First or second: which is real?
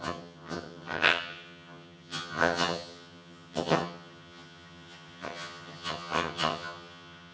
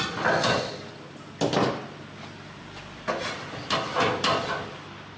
second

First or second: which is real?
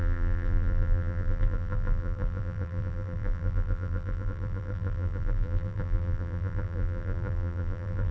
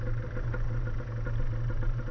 second